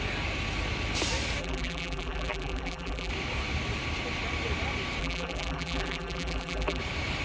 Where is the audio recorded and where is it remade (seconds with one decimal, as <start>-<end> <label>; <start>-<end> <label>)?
0.0-1.4 recorded; 1.4-3.1 remade; 3.1-5.0 recorded; 5.0-6.8 remade; 6.8-7.2 recorded